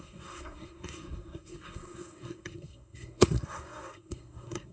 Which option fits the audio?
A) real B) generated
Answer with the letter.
B